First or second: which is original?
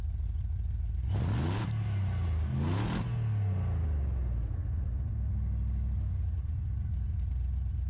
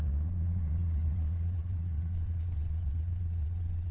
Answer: first